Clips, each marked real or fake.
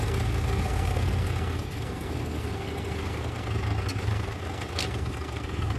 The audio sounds fake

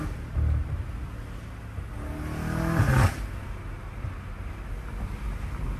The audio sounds real